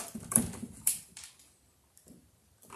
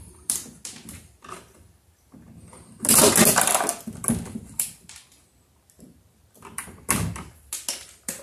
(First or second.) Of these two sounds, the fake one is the first